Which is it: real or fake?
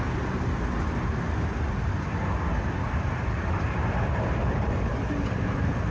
real